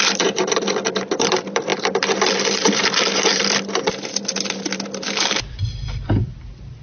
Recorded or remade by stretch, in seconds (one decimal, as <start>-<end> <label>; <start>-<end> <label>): 0.0-1.7 remade; 1.7-2.4 recorded; 2.4-3.3 remade; 3.3-5.1 recorded; 5.1-6.8 remade